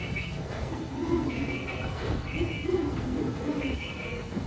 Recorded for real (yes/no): no